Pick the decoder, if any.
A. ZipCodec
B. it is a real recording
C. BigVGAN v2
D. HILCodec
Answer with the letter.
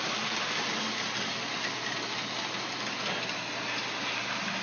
B